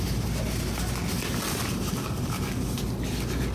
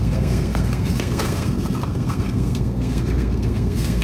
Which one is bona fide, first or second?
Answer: first